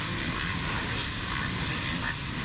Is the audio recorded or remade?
recorded